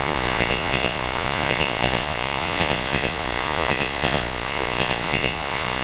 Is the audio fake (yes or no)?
yes